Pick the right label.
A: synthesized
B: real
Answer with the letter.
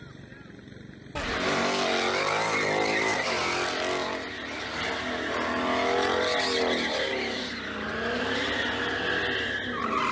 B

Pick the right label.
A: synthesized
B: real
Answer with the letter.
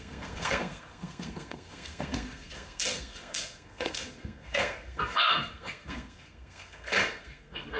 A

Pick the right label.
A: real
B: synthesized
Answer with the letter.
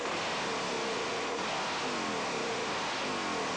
A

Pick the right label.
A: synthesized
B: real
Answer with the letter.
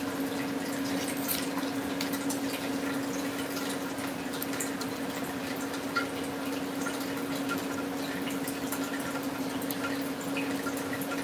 B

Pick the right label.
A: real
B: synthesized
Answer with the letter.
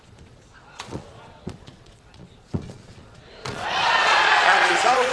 B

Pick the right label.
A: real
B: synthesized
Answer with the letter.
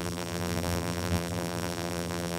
B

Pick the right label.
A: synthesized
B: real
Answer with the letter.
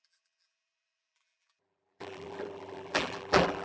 A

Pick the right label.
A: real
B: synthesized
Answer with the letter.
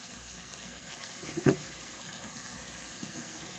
B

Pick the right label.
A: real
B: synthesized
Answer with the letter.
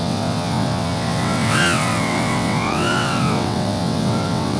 B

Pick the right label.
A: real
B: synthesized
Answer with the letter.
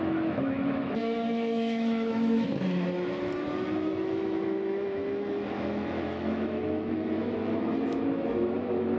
B